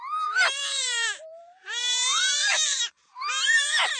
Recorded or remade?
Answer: remade